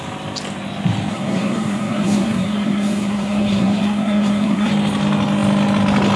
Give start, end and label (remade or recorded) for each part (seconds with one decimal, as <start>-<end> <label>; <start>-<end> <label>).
0.0-1.1 recorded; 1.1-4.7 remade; 4.7-6.2 recorded